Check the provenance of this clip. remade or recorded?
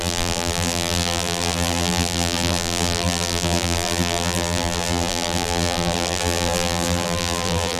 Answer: remade